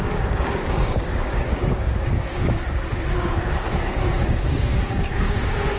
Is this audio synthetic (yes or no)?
yes